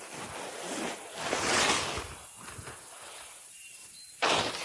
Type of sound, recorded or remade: recorded